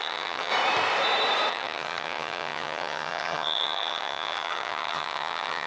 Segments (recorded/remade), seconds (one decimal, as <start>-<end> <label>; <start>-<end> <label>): 0.0-0.5 remade; 0.5-1.5 recorded; 1.5-5.7 remade